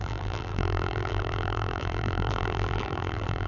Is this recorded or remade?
remade